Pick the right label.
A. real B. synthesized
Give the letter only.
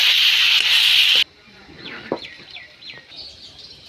A